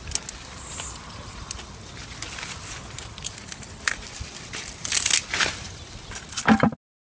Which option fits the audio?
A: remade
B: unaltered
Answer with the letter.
B